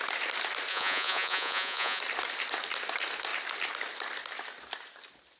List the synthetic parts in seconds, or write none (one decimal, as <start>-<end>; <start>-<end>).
0.7-2.0